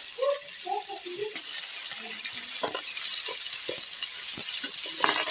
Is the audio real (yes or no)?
yes